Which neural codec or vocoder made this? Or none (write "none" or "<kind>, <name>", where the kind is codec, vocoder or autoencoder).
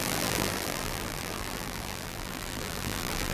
vocoder, BigVGAN v2